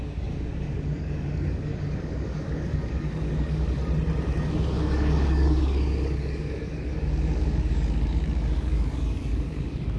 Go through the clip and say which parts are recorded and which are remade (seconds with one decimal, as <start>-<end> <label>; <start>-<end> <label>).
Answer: 0.0-3.8 remade; 3.8-4.5 recorded; 4.5-10.0 remade

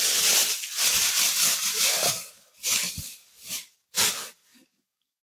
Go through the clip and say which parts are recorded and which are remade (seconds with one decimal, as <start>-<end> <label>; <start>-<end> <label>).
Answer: 0.0-1.7 recorded; 1.7-5.3 remade

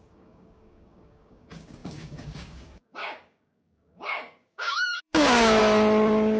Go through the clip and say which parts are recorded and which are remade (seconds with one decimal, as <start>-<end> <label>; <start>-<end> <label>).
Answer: 0.0-5.6 remade; 5.6-6.4 recorded

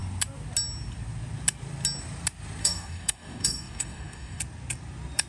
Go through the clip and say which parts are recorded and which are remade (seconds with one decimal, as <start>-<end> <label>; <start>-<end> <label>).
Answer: 0.0-2.6 recorded; 2.6-4.4 remade; 4.4-5.3 recorded

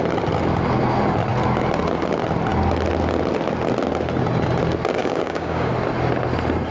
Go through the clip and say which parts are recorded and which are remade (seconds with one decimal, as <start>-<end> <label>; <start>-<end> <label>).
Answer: 0.0-5.0 recorded; 5.0-5.7 remade; 5.7-6.7 recorded

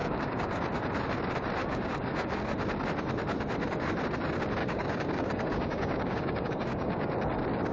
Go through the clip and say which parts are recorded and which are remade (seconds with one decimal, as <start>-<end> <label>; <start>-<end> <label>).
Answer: 0.0-0.6 remade; 0.6-1.6 recorded; 1.6-2.4 remade; 2.4-4.6 recorded; 4.6-7.1 remade; 7.1-7.7 recorded